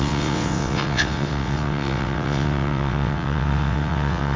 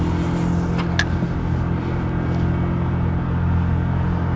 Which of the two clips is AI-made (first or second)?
first